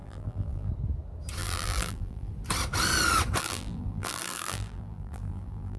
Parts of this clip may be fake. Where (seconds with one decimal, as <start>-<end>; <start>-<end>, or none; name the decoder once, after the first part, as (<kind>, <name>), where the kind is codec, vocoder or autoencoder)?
0.0-0.7 (vocoder, BigVGAN v2); 1.4-2.3; 3.4-5.8